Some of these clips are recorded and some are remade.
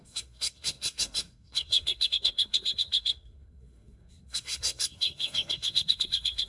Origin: remade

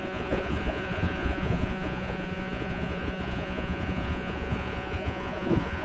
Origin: remade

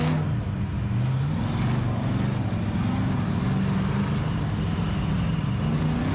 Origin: recorded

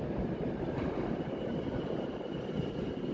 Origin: recorded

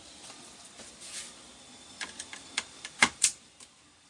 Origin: remade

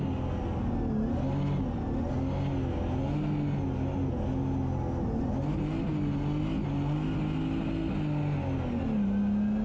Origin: recorded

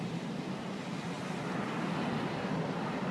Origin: recorded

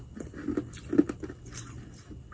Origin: recorded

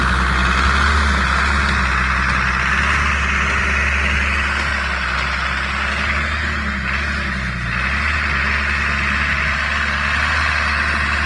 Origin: recorded